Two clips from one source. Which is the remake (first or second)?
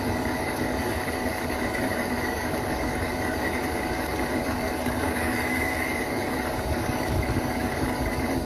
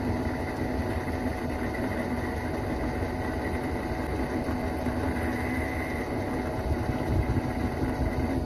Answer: first